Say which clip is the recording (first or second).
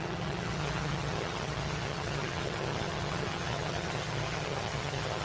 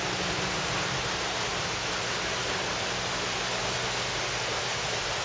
second